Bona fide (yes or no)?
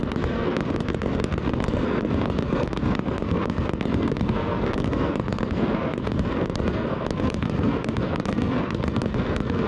no